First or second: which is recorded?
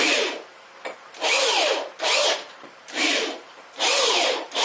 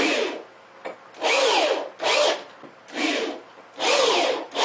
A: second